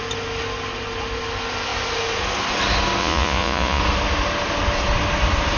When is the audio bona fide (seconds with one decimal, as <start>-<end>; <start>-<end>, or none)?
0.0-3.0; 3.8-5.6